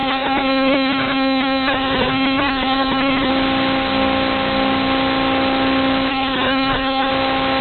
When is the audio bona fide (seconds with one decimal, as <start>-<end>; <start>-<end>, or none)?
3.3-6.1; 7.1-7.6